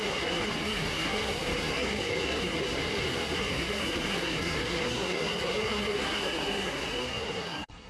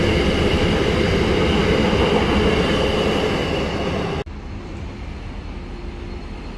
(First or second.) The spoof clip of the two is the first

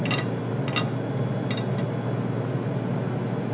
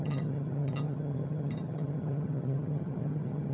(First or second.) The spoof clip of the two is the second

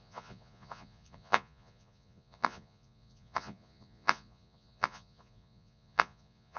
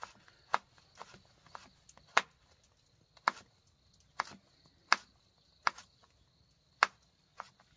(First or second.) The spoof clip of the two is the first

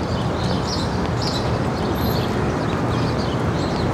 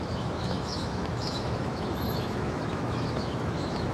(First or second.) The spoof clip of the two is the second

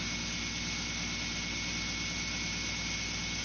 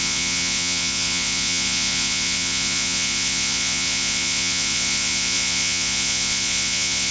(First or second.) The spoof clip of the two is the second